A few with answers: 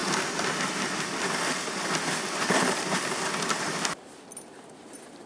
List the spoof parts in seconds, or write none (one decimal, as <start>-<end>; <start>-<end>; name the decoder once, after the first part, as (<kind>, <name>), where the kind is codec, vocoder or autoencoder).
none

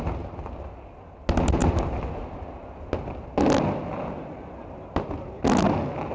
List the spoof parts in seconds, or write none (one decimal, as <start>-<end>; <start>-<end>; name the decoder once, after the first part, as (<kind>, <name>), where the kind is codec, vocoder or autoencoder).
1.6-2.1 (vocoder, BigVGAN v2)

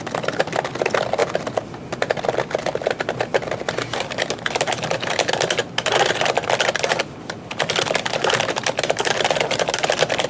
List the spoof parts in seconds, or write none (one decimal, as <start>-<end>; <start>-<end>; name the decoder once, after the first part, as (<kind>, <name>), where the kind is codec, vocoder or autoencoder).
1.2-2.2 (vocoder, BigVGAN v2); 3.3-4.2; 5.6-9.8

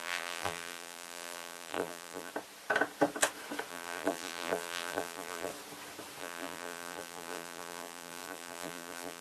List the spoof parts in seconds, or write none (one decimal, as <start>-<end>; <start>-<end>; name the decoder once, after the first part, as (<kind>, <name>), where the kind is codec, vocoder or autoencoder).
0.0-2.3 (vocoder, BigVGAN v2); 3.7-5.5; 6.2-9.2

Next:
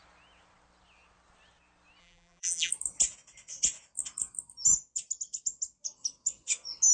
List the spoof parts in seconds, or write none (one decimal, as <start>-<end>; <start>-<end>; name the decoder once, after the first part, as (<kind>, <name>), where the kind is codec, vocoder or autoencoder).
2.0-2.7 (vocoder, BigVGAN v2)

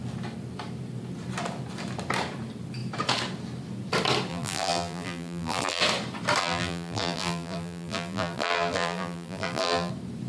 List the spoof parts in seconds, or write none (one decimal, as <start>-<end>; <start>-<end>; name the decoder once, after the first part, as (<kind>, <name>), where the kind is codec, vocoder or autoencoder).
4.3-5.8 (vocoder, BigVGAN v2); 6.4-9.9

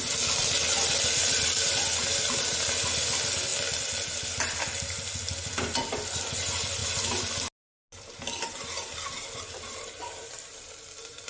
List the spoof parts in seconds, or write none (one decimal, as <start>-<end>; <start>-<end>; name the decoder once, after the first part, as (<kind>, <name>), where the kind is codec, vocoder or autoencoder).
none

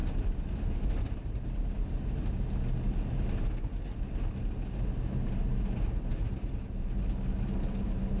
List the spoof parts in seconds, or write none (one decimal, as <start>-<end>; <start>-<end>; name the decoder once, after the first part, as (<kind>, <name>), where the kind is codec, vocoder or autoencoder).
none